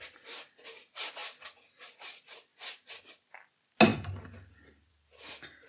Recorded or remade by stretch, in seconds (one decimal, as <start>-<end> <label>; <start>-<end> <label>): 0.0-5.7 recorded

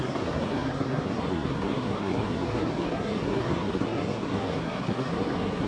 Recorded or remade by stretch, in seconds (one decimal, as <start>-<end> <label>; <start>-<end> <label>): 0.0-5.7 remade

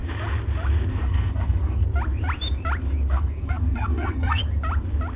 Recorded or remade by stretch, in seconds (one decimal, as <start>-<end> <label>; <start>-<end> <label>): 0.0-0.9 recorded; 0.9-1.8 remade; 1.8-3.1 recorded; 3.1-4.4 remade; 4.4-5.2 recorded

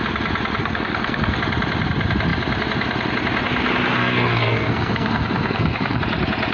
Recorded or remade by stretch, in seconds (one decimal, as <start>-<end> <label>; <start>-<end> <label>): 0.0-0.6 recorded; 0.6-1.4 remade; 1.4-4.0 recorded; 4.0-6.0 remade; 6.0-6.5 recorded

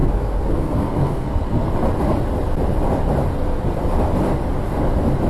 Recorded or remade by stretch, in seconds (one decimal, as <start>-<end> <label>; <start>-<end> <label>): 0.0-1.7 remade; 1.7-5.3 recorded

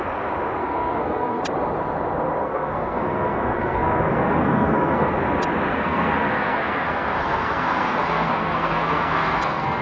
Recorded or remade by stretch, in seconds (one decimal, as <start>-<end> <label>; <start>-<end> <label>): 0.0-0.6 recorded; 0.6-1.4 remade; 1.4-2.4 recorded; 2.4-5.1 remade; 5.1-5.7 recorded; 5.7-9.8 remade

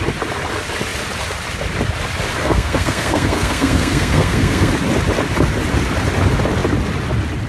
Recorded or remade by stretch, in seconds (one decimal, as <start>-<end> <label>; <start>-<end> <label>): 0.0-2.4 recorded; 2.4-4.7 remade; 4.7-7.5 recorded